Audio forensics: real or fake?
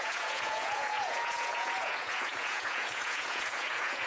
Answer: fake